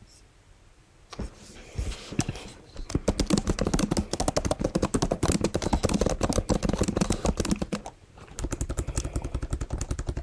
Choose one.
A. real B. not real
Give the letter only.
A